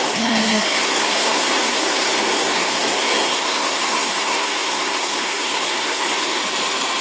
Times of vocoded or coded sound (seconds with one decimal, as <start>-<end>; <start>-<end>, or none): 0.0-6.4